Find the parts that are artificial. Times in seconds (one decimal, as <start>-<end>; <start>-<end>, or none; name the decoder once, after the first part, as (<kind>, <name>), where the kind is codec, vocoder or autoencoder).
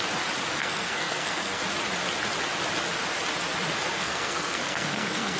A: 0.6-1.6 (codec, SNAC); 3.9-5.4